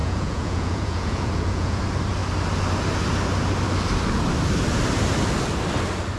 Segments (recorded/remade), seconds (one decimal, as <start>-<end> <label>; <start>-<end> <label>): 0.0-1.8 remade; 1.8-6.2 recorded